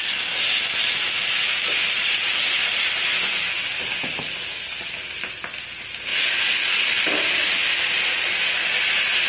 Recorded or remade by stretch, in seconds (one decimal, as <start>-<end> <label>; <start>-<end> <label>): 0.0-9.3 recorded